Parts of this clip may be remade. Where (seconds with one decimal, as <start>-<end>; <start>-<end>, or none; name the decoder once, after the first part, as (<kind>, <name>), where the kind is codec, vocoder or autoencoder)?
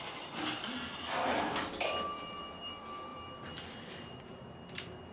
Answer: 0.0-5.1 (vocoder, BigVGAN v2)